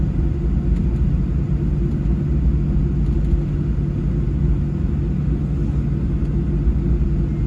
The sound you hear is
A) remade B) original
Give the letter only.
B